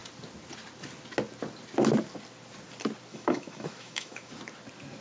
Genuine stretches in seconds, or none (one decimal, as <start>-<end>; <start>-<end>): 0.0-3.1; 4.3-5.0

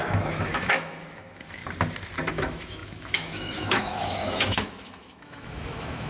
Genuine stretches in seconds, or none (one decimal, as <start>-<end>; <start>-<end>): 1.6-2.3

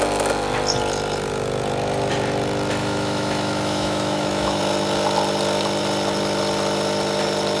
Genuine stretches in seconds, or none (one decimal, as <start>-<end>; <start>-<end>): 0.0-2.8; 4.6-7.6

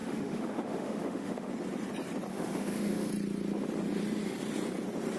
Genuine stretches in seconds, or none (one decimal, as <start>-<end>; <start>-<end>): 1.5-2.3; 3.1-5.2

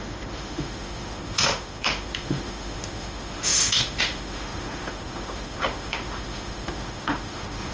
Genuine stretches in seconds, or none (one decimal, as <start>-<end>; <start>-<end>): none

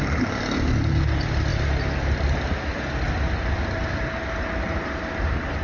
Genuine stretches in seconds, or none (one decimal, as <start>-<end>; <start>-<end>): 0.0-5.6